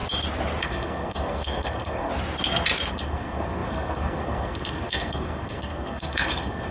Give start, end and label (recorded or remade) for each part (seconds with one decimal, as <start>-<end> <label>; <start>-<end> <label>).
0.0-0.6 recorded; 0.6-2.1 remade; 2.1-2.9 recorded; 2.9-6.7 remade